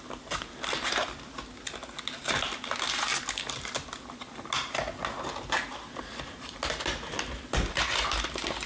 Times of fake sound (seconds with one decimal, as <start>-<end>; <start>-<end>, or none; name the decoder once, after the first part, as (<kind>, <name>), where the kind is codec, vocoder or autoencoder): none

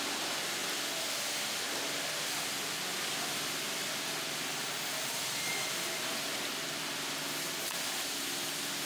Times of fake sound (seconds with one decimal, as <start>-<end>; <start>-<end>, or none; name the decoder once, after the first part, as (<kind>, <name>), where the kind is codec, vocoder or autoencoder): none

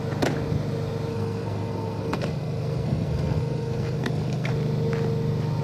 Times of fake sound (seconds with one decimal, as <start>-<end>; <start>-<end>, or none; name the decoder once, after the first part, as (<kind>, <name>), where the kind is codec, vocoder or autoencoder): 1.1-4.5 (codec, SNAC)

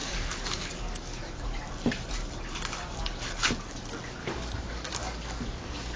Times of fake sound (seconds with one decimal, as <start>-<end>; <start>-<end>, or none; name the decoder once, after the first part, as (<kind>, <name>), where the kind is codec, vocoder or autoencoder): 0.0-1.2 (codec, DAC); 4.2-6.0

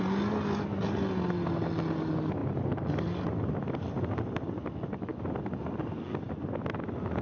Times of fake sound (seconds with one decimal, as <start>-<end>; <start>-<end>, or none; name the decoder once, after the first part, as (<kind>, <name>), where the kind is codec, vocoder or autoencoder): none

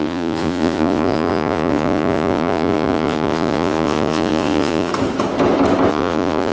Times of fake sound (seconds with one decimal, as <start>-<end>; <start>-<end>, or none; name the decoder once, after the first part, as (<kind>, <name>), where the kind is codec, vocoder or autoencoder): 0.0-4.9 (vocoder, Vocos); 5.9-6.5

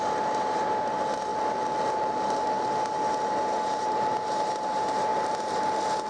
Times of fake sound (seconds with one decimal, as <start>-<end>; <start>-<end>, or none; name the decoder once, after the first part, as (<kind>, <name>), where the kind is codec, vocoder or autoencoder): 0.0-1.3 (vocoder, BigVGAN v2); 3.3-5.1

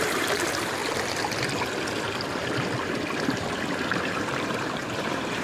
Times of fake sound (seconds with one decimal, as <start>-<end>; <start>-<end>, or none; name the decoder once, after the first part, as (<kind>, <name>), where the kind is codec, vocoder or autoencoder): 0.0-0.8 (vocoder, BigVGAN v2); 4.0-5.4